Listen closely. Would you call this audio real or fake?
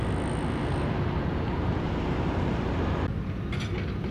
real